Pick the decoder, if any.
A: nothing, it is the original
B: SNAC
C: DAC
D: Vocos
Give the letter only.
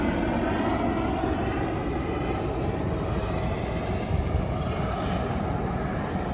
A